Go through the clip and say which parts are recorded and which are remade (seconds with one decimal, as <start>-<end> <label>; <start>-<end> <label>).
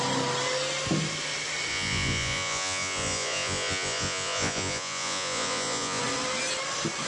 0.0-1.7 recorded; 1.7-6.0 remade; 6.0-7.1 recorded